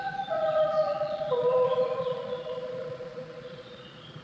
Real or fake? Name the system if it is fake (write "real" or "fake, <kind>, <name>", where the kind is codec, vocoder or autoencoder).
fake, vocoder, Vocos